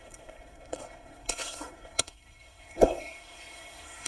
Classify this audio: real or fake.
fake